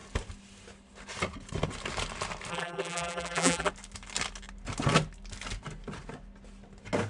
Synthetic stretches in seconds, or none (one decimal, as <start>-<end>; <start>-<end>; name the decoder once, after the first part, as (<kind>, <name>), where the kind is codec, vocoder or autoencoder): 2.5-3.7 (vocoder, BigVGAN v2)